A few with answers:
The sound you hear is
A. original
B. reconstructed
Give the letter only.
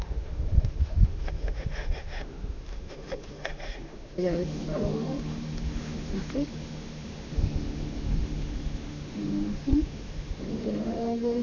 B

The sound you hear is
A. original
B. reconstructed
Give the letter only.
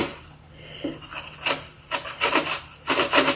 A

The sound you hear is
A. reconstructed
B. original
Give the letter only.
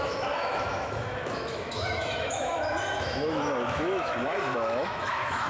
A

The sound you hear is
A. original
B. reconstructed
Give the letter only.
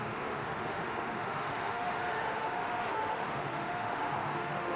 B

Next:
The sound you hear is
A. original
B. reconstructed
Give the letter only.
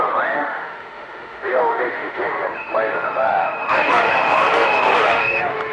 B